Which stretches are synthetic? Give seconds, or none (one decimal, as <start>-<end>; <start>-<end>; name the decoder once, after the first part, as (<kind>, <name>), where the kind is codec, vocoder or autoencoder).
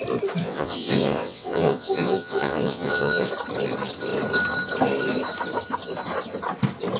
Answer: 0.4-3.3 (vocoder, WaveNeXt)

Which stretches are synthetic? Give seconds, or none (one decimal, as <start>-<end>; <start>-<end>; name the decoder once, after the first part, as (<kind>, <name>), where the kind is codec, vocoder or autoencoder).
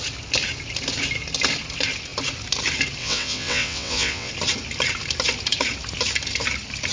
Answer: 3.0-4.3 (vocoder, WaveNeXt)